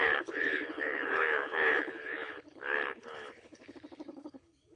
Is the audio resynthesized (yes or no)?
yes